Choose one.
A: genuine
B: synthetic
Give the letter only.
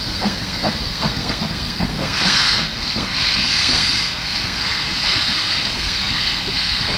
B